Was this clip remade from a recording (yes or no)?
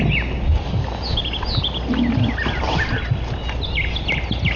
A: no